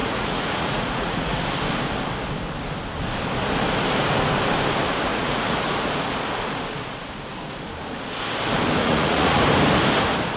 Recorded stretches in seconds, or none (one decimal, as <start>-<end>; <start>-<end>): 1.4-5.1; 5.9-8.8; 9.4-10.4